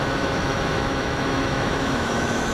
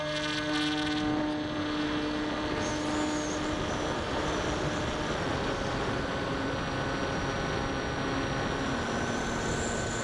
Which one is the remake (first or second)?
first